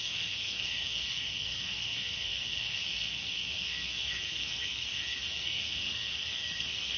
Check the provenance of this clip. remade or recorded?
remade